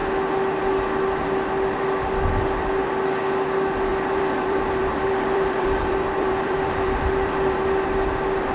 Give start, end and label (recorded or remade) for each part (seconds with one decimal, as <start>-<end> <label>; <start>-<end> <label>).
0.0-3.9 recorded; 3.9-7.6 remade; 7.6-8.5 recorded

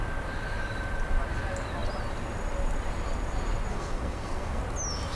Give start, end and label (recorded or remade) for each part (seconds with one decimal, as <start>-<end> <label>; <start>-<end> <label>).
0.0-3.7 recorded; 3.7-4.6 remade; 4.6-5.1 recorded

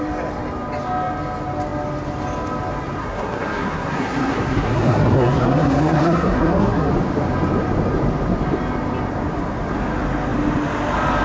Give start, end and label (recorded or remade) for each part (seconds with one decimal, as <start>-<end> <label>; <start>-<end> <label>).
0.0-3.0 recorded; 3.0-6.9 remade; 6.9-11.2 recorded

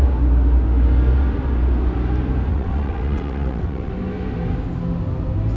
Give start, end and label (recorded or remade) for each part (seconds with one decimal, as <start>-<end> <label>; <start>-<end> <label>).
0.0-2.5 recorded; 2.5-3.9 remade; 3.9-5.6 recorded

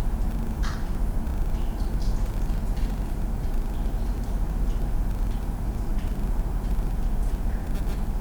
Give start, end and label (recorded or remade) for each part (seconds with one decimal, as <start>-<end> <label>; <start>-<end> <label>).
0.0-8.2 recorded

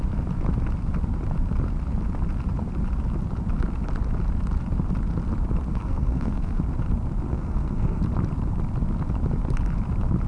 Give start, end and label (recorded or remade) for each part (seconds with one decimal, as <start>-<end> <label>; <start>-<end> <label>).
0.0-5.7 recorded; 5.7-6.6 remade; 6.6-7.3 recorded; 7.3-8.0 remade; 8.0-10.3 recorded

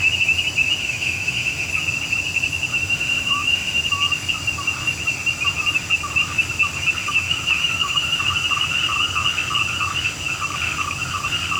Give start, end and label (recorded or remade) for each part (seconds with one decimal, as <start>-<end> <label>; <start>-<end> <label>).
0.0-0.8 recorded; 0.8-1.7 remade; 1.7-2.7 recorded; 2.7-3.8 remade; 3.8-7.0 recorded; 7.0-8.2 remade; 8.2-11.6 recorded